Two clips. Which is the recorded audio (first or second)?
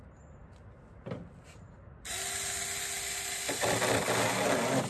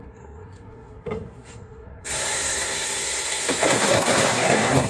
first